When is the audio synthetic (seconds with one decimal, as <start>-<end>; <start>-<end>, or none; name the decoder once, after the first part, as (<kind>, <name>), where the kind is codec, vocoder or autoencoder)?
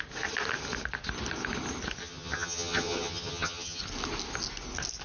2.0-3.8 (vocoder, HiFi-GAN)